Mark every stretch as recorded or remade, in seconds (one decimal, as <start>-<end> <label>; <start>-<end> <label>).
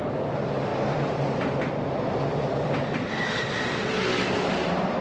0.0-5.0 recorded